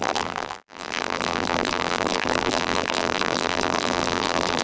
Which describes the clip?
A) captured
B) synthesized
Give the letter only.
B